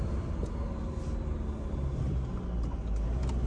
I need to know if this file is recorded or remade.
recorded